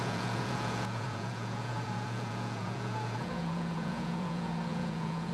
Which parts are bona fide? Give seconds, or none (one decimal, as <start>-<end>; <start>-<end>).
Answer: none